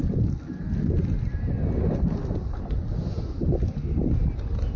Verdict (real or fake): real